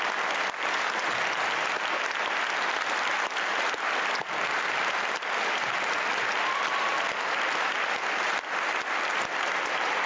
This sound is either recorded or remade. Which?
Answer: recorded